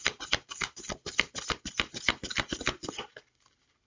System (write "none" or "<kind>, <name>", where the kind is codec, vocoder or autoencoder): none